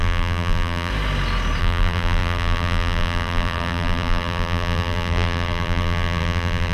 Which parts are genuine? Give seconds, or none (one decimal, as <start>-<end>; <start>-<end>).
0.9-1.6